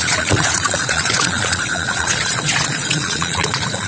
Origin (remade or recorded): remade